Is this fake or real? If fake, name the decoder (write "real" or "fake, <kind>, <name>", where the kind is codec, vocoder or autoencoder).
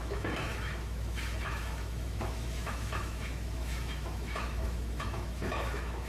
fake, autoencoder, DAC-VAE